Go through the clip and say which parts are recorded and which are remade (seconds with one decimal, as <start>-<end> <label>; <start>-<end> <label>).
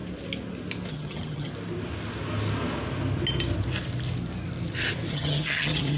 0.0-0.9 recorded; 0.9-1.5 remade; 1.5-5.1 recorded; 5.1-6.0 remade